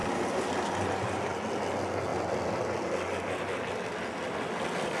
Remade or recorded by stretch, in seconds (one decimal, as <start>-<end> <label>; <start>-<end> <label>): 0.0-5.0 recorded